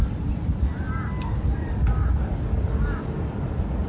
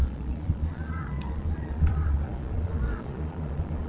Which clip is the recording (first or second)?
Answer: first